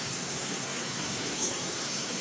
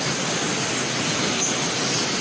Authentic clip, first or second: second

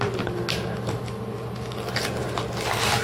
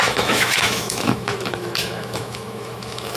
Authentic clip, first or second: first